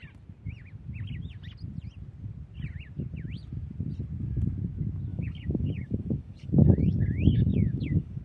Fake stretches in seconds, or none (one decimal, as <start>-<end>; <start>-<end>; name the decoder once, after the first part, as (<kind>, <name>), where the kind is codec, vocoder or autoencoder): 5.1-8.2 (codec, DAC)